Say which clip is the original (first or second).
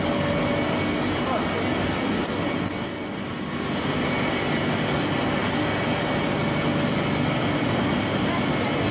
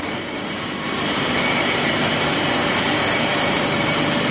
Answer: first